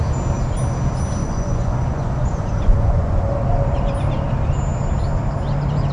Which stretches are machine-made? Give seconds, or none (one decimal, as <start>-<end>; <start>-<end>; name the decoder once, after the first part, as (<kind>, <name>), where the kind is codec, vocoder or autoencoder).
1.2-3.2 (vocoder, Vocos)